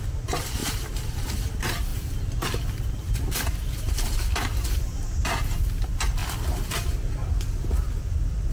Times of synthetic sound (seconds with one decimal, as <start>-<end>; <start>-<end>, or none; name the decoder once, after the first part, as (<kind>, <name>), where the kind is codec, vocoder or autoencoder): 0.6-1.5 (vocoder, BigVGAN v2)